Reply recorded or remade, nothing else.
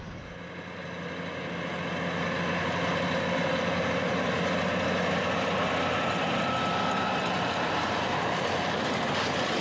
recorded